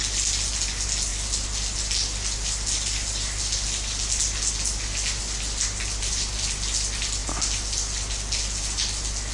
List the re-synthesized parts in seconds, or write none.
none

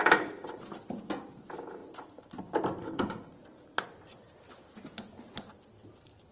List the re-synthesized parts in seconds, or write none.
2.8-3.3 (codec, HILCodec)

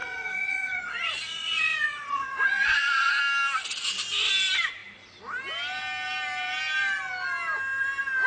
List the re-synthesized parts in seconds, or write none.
0.0-3.1 (vocoder, Vocos)

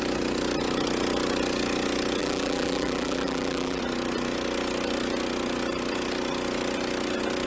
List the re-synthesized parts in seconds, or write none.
2.2-3.8 (vocoder, BigVGAN v2)

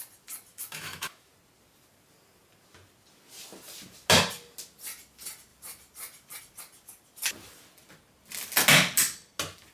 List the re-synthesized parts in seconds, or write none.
0.5-1.3 (autoencoder, DAC-VAE)